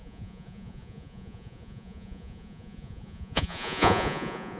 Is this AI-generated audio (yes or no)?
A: yes